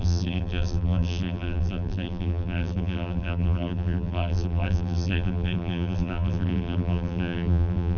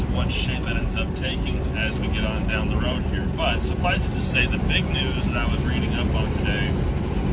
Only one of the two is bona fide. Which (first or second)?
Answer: second